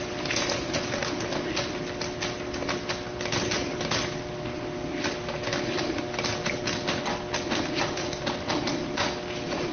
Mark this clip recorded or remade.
recorded